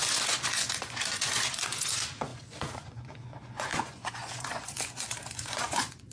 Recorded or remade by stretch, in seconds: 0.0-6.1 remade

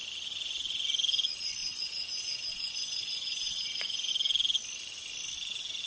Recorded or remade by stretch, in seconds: 0.0-1.6 recorded; 1.6-4.1 remade; 4.1-5.9 recorded

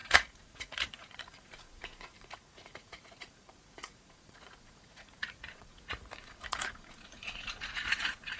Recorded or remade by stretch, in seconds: 0.0-8.4 remade